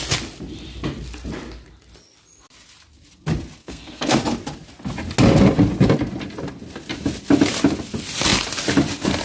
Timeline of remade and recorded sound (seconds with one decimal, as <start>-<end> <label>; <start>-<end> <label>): 0.0-3.6 recorded; 3.6-4.2 remade; 4.2-9.2 recorded